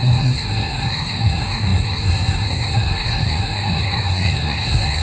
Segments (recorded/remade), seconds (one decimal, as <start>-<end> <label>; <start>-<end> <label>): 0.0-5.0 remade